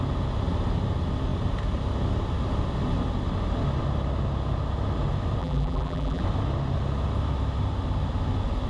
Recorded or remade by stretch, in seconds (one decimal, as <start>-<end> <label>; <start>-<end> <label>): 0.0-5.4 recorded; 5.4-6.2 remade; 6.2-8.7 recorded